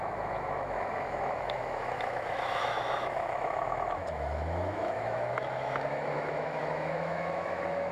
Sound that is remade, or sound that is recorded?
remade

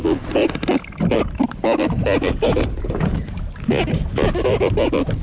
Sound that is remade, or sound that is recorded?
recorded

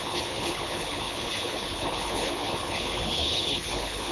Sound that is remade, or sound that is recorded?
remade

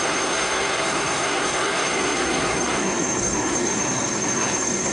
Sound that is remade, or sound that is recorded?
remade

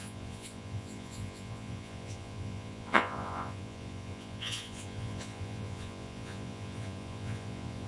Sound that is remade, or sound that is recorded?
remade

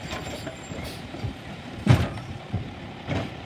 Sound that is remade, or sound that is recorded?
remade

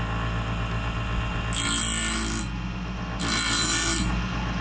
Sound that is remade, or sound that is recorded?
recorded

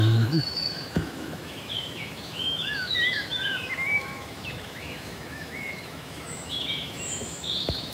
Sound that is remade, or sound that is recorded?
remade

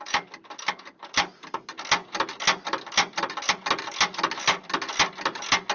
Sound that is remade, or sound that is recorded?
recorded